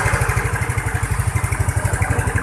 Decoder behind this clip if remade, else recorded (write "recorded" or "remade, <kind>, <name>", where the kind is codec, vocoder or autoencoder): recorded